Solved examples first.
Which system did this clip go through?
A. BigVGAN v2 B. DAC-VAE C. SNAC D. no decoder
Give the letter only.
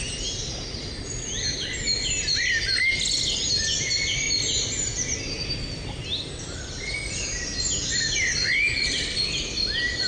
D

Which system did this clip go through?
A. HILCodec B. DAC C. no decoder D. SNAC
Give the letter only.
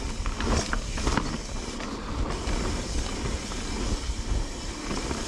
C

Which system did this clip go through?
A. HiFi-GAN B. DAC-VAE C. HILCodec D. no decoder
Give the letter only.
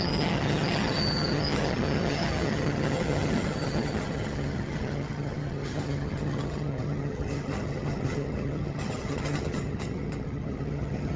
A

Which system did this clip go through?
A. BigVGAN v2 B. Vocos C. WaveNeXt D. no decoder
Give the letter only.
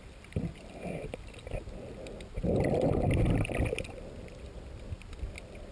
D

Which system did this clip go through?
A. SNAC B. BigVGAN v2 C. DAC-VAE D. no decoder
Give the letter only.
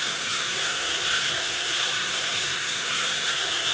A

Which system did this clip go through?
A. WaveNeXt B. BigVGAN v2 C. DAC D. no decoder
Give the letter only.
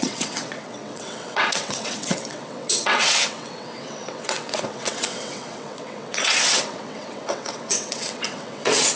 A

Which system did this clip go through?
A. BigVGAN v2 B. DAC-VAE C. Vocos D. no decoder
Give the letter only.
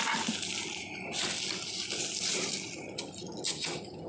D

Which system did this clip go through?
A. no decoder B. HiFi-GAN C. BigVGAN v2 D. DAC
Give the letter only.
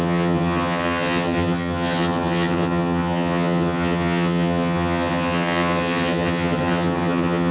B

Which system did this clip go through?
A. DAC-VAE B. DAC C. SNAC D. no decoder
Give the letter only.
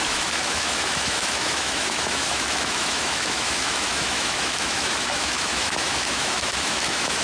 A